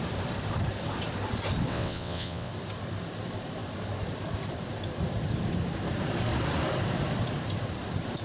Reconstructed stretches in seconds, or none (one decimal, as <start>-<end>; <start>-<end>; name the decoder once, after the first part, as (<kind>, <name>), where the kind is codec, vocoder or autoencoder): 1.7-2.5 (vocoder, WaveNeXt)

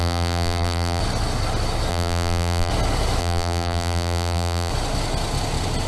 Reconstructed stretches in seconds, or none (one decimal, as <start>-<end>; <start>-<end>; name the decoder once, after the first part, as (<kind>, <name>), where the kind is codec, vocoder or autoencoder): 0.0-1.0 (vocoder, BigVGAN v2); 1.9-2.7; 3.2-4.7

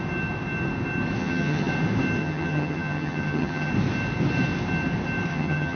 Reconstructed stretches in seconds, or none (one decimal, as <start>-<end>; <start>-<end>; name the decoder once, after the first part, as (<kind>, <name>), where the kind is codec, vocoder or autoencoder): 1.2-1.7 (vocoder, HiFi-GAN); 2.2-3.7; 5.3-5.8

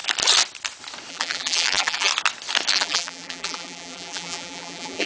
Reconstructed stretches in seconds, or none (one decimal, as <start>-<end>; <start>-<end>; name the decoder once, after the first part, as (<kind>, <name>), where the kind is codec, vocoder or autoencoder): 1.1-2.1 (vocoder, BigVGAN v2); 2.7-5.1